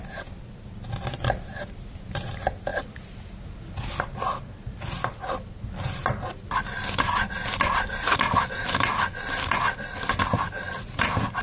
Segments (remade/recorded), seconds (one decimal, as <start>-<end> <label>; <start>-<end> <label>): 0.0-11.4 recorded

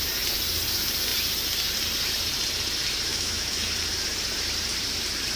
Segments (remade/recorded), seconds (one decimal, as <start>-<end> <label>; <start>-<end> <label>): 0.0-3.1 recorded; 3.1-3.7 remade; 3.7-5.4 recorded

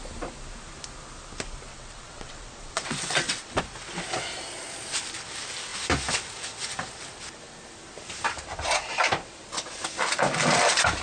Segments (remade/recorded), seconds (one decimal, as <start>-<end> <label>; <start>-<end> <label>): 0.0-1.7 recorded; 1.7-3.6 remade; 3.6-11.0 recorded

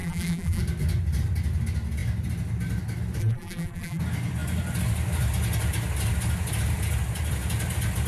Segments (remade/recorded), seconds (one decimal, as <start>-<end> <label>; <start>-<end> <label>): 0.0-0.6 remade; 0.6-3.2 recorded; 3.2-4.0 remade; 4.0-8.1 recorded